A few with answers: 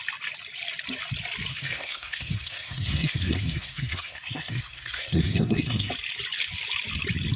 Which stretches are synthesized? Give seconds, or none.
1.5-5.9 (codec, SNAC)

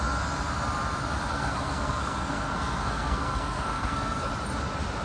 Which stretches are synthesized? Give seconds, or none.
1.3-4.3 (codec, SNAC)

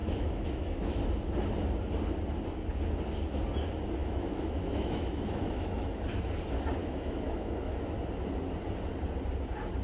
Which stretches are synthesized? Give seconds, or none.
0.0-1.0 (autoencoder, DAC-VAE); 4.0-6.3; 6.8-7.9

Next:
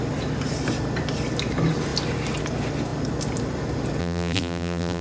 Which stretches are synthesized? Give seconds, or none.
4.0-5.0 (vocoder, BigVGAN v2)

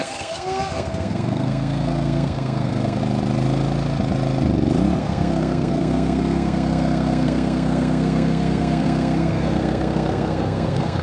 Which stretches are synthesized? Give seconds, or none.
0.0-3.0 (codec, SNAC); 5.0-11.0